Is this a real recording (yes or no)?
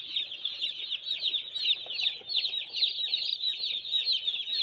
yes